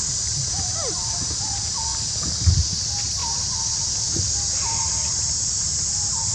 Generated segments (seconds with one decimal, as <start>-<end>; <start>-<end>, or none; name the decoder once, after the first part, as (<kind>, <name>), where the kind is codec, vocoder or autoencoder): 0.0-1.9 (vocoder, BigVGAN v2); 2.8-3.2; 4.8-6.3

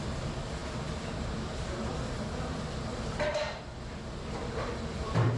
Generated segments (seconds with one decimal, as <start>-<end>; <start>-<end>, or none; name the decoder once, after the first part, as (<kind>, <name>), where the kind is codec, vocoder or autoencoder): 0.0-5.4 (vocoder, BigVGAN v2)

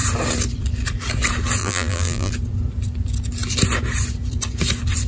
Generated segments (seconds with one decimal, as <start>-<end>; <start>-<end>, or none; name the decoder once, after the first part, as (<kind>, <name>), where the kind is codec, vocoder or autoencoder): 1.6-2.3 (vocoder, BigVGAN v2)

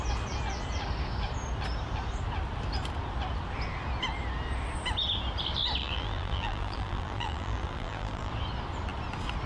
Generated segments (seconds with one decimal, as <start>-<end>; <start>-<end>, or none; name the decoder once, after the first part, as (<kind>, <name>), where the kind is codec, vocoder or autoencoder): 5.8-8.3 (vocoder, BigVGAN v2)

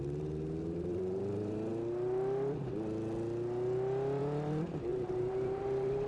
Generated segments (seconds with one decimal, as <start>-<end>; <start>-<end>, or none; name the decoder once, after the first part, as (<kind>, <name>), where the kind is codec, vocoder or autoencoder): 0.0-1.7 (vocoder, BigVGAN v2); 4.2-6.1

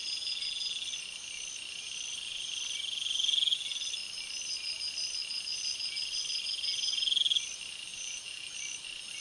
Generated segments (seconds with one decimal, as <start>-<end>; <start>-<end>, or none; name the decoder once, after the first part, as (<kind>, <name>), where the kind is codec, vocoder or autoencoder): 7.9-8.5 (vocoder, BigVGAN v2)

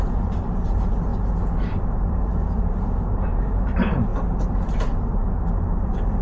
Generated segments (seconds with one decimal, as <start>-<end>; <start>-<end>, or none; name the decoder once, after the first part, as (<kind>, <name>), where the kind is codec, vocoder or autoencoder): 0.0-1.1 (vocoder, BigVGAN v2); 1.7-6.2

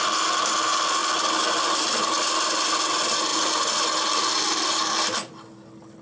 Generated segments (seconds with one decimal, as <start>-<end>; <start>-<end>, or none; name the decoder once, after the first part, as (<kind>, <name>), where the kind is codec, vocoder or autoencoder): 1.0-2.3 (vocoder, BigVGAN v2); 3.3-4.2; 4.8-5.3